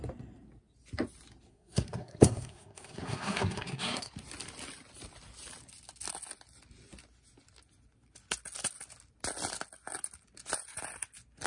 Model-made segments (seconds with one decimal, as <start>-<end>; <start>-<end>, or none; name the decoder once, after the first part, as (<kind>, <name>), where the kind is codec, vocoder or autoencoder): 1.5-4.1 (codec, SNAC)